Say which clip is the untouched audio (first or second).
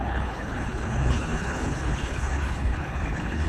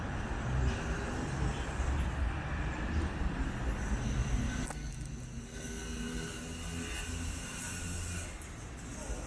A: second